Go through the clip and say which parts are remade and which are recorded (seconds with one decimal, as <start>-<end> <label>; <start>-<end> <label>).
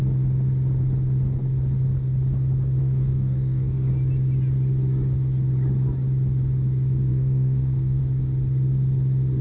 0.0-2.8 recorded; 2.8-3.9 remade; 3.9-7.1 recorded; 7.1-8.0 remade; 8.0-9.4 recorded